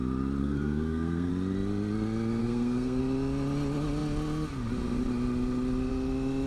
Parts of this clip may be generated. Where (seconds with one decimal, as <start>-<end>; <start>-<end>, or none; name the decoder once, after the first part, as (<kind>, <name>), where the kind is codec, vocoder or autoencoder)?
0.4-1.3 (codec, SNAC); 2.4-3.0